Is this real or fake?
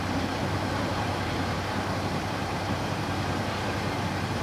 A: fake